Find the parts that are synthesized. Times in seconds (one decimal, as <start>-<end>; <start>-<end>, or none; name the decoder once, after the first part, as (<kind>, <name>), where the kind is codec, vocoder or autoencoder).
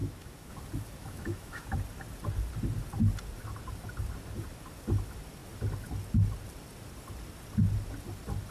0.0-0.5 (autoencoder, DAC-VAE); 1.0-1.7